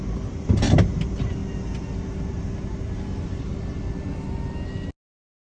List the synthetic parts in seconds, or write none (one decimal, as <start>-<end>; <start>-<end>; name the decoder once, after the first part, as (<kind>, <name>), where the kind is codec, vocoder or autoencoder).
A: 0.0-1.4 (vocoder, BigVGAN v2); 2.9-3.5